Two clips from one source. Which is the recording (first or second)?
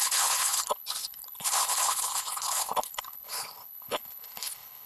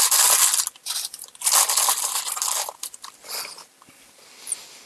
second